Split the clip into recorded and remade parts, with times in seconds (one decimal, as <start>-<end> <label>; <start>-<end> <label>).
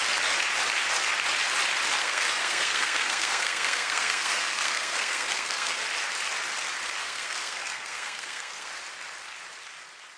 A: 0.0-2.0 recorded; 2.0-5.8 remade; 5.8-7.0 recorded; 7.0-8.7 remade; 8.7-10.2 recorded